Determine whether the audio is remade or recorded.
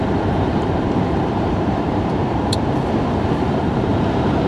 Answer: remade